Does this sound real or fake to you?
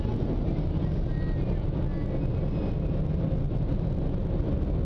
real